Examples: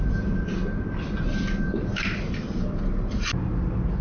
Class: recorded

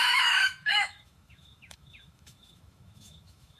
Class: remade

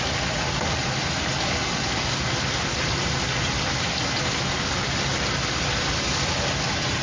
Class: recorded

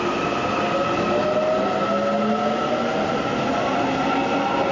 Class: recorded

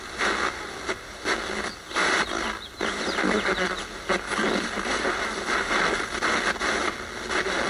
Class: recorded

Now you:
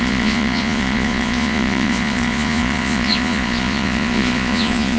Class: remade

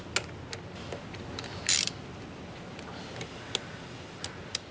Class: recorded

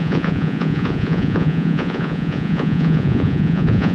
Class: remade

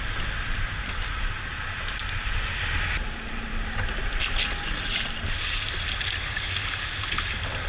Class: recorded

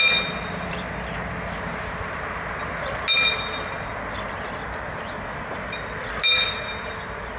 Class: recorded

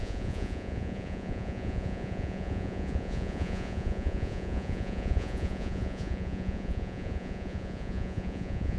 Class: remade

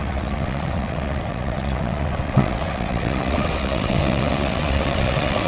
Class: remade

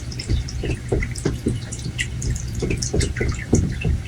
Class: remade